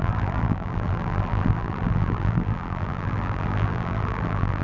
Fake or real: fake